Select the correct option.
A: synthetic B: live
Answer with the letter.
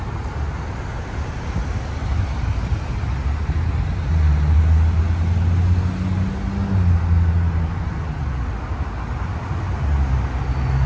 B